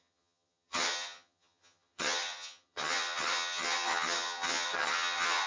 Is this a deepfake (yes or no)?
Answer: yes